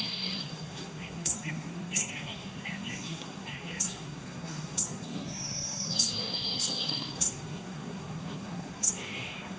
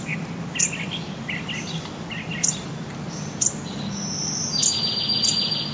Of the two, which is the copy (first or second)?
first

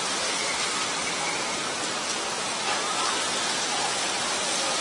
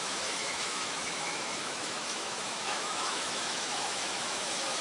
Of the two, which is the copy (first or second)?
second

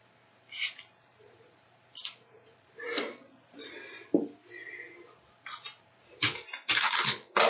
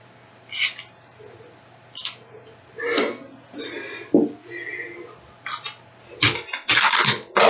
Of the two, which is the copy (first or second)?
first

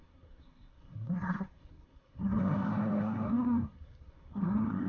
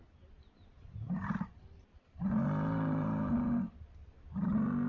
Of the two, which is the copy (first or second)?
first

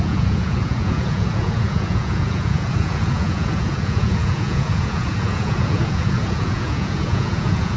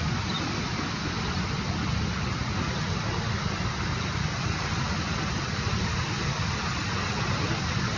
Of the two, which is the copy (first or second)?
first